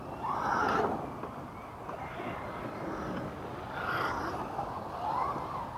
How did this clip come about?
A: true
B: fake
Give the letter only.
A